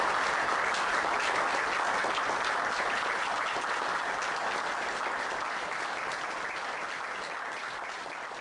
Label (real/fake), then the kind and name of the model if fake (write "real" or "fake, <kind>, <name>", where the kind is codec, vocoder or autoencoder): real